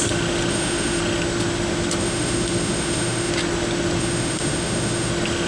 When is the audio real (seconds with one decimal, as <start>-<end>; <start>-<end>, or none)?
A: 0.0-0.5; 1.0-2.0; 3.3-4.0; 5.1-5.5